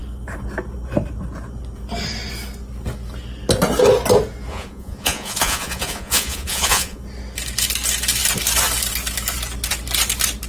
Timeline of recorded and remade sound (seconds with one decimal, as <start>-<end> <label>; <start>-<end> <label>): 0.0-4.5 recorded; 4.5-7.0 remade; 7.0-10.5 recorded